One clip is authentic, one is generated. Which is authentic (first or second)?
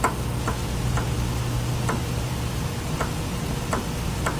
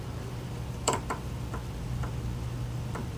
first